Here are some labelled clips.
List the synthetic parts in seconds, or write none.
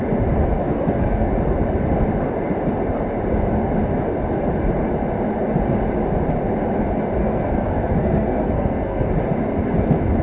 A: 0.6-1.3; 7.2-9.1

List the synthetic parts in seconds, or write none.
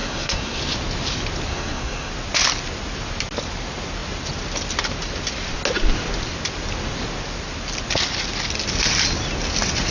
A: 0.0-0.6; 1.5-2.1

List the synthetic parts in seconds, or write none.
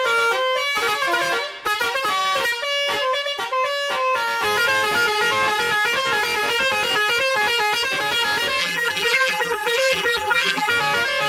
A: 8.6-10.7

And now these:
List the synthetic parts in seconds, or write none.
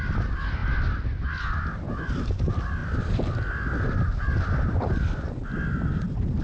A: 0.0-0.6; 1.6-6.4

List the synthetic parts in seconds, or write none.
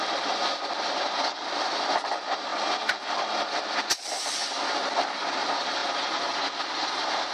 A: none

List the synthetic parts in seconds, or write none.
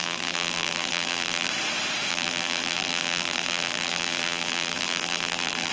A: 0.0-1.5; 2.1-5.7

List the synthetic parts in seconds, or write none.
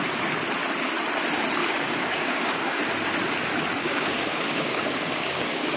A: 1.6-2.8; 3.8-5.8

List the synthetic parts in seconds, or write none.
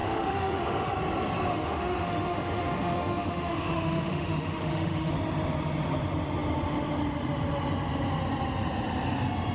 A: 0.0-0.9; 1.5-5.1